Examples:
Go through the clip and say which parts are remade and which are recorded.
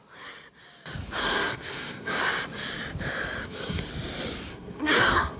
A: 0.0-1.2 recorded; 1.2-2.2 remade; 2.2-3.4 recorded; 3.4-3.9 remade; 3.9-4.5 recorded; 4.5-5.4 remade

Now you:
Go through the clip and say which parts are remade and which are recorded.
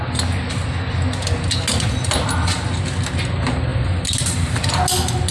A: 0.0-5.3 recorded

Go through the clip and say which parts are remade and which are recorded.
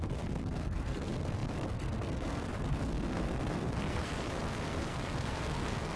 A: 0.0-6.0 remade